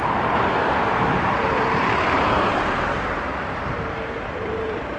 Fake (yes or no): yes